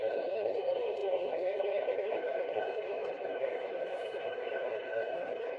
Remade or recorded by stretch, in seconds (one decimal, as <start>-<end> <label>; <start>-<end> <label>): 0.0-5.6 remade